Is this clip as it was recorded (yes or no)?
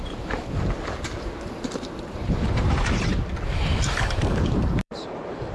no